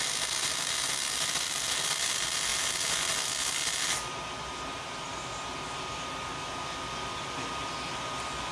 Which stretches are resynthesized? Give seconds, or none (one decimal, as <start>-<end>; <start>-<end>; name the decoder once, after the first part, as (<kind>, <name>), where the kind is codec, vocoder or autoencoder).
none